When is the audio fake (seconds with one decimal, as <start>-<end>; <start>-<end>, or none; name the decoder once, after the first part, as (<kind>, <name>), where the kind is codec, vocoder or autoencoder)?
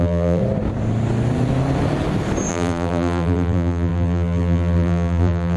0.0-0.4 (vocoder, BigVGAN v2); 2.5-5.6